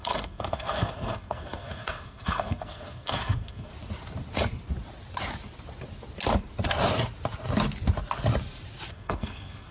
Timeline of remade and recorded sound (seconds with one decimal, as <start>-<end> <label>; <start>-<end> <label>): 0.0-3.7 remade; 3.7-8.9 recorded; 8.9-9.7 remade